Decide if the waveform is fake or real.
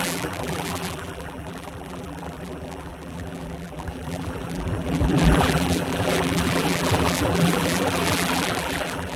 fake